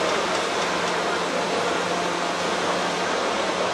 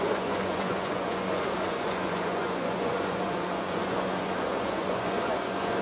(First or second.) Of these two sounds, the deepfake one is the second